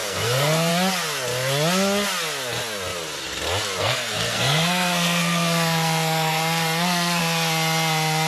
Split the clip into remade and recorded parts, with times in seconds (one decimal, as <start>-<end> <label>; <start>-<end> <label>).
0.0-0.7 remade; 0.7-3.8 recorded; 3.8-7.2 remade; 7.2-8.3 recorded

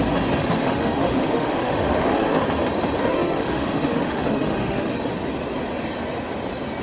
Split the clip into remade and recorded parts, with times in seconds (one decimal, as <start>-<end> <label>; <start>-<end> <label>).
0.0-0.4 recorded; 0.4-2.4 remade; 2.4-3.0 recorded; 3.0-4.9 remade; 4.9-6.8 recorded

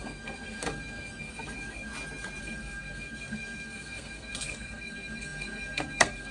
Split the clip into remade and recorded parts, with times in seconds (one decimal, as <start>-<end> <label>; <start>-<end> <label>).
0.0-1.9 remade; 1.9-2.4 recorded; 2.4-6.3 remade

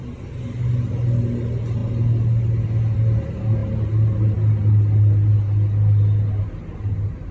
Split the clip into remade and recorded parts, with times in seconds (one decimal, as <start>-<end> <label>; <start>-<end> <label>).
0.0-7.3 recorded

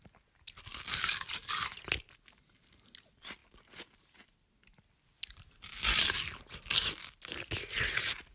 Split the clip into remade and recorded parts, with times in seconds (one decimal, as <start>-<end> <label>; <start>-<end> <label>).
0.0-8.3 recorded

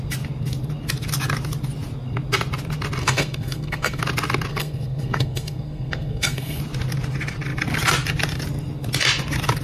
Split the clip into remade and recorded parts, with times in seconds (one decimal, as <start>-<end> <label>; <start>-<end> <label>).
0.0-3.0 recorded; 3.0-4.0 remade; 4.0-4.5 recorded; 4.5-6.6 remade; 6.6-9.6 recorded

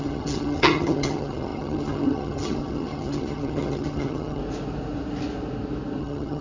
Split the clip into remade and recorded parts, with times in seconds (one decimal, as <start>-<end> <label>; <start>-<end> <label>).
0.0-4.4 remade; 4.4-6.0 recorded; 6.0-6.4 remade